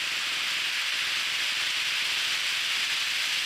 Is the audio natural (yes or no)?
yes